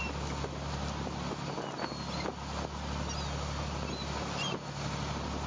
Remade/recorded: recorded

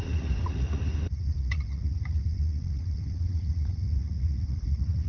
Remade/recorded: remade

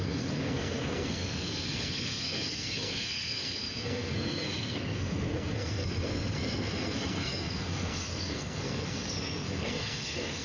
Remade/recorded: remade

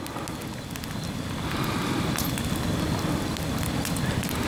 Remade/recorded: recorded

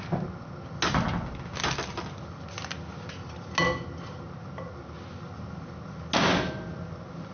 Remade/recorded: recorded